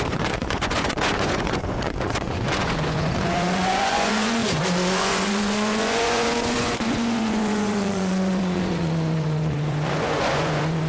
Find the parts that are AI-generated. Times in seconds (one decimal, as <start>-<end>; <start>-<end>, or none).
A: 0.0-10.9